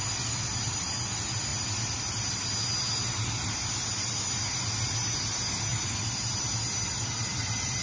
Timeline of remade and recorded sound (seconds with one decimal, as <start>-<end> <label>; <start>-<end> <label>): 0.0-7.8 recorded